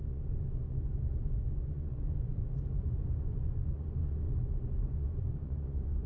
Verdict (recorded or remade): remade